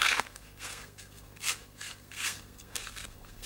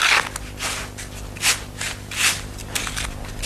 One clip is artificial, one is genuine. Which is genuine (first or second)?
second